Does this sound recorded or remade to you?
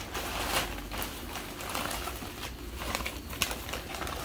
recorded